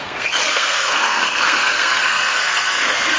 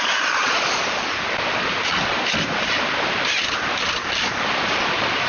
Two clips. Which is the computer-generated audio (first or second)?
first